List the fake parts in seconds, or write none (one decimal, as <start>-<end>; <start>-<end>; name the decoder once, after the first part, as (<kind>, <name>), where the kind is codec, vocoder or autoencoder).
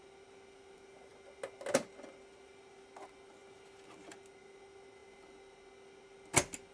none